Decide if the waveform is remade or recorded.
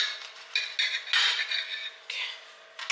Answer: recorded